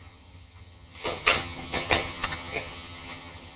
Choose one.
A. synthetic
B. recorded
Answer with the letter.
A